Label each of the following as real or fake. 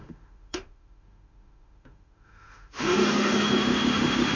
fake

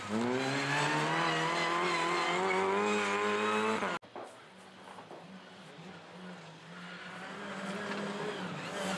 real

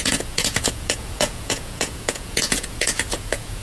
fake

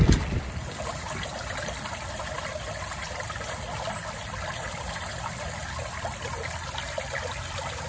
real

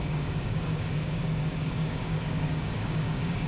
fake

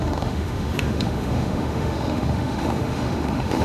fake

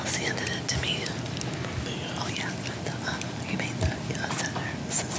real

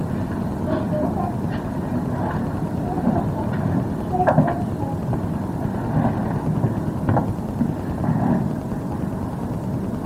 real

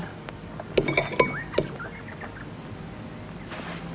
real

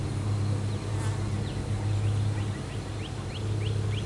real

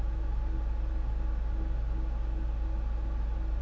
real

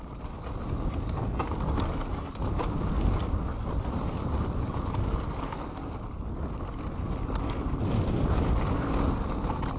real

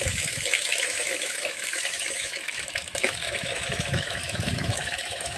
fake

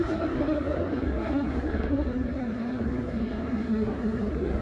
fake